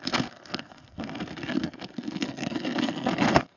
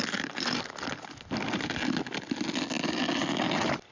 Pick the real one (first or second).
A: second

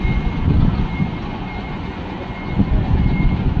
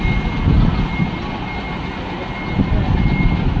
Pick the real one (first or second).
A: second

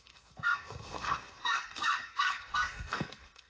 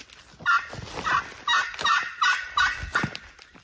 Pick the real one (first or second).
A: second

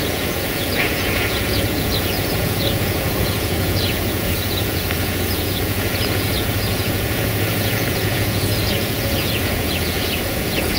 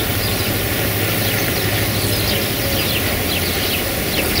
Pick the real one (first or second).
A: second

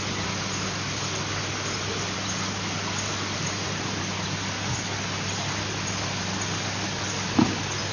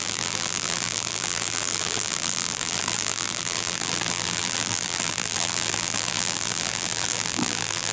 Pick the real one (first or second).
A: first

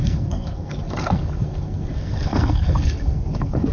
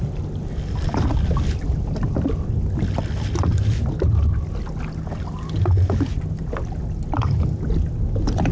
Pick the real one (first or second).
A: second